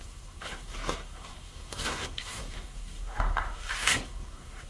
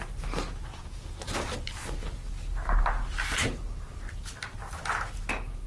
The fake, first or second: first